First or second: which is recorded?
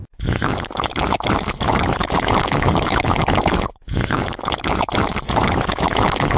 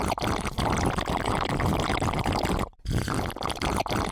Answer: second